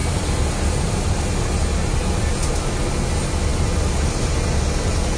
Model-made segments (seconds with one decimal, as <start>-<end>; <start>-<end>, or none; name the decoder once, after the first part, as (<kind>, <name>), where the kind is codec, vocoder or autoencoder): none